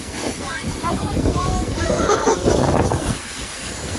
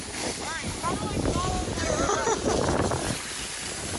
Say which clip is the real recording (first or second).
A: second